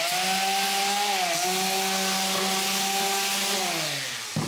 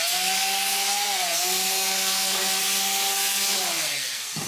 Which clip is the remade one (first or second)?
second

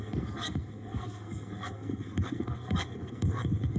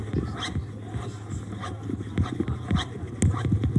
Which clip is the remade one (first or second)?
first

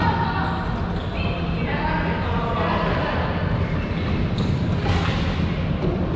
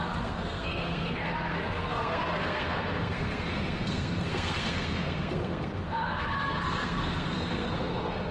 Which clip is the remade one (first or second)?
second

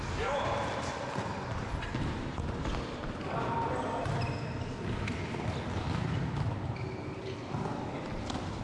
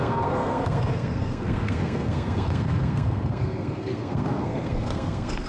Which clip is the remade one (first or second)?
second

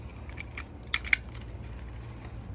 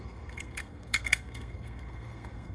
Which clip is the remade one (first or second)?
second